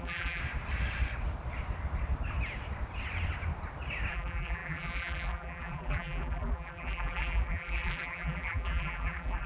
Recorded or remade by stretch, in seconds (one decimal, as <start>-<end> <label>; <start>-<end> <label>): 0.0-0.4 remade; 0.4-4.1 recorded; 4.1-9.5 remade